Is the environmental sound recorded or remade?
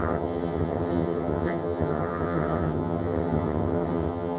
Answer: remade